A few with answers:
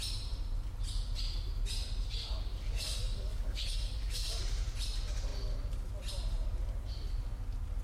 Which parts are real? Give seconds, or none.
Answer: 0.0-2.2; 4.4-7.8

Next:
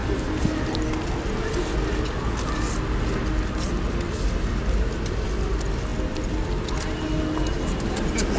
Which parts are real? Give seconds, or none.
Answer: 0.0-8.4

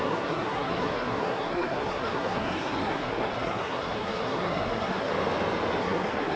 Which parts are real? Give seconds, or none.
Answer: 5.1-5.8